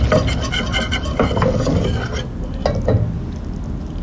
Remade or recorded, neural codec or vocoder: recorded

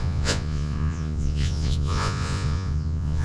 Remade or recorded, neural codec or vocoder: remade, vocoder, Vocos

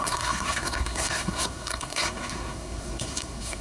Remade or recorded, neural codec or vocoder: remade, codec, SNAC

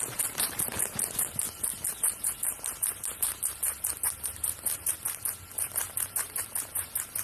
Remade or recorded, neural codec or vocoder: remade, vocoder, BigVGAN v2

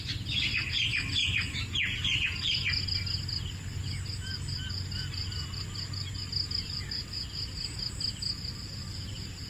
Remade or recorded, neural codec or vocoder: recorded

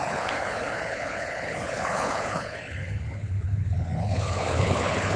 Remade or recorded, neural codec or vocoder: remade, codec, HILCodec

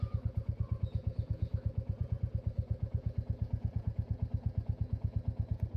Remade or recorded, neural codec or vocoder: remade, vocoder, Vocos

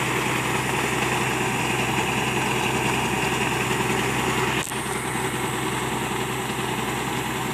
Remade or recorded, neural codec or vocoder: recorded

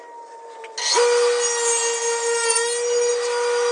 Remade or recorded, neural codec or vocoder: recorded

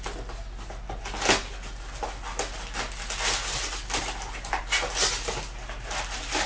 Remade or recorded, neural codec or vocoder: recorded